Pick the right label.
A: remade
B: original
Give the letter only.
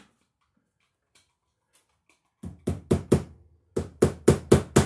B